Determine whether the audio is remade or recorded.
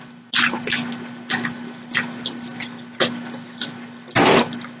recorded